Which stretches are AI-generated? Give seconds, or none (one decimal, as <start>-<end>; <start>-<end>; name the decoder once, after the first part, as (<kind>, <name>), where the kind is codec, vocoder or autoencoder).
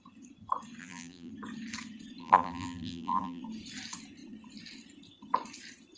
0.8-1.3 (vocoder, BigVGAN v2); 2.2-3.4